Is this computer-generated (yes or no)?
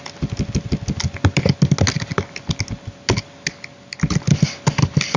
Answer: no